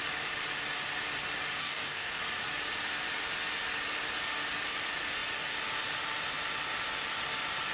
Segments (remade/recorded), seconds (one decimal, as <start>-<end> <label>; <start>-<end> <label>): 0.0-1.6 recorded; 1.6-2.2 remade; 2.2-7.7 recorded